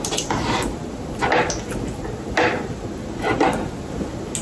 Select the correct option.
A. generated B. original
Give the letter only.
B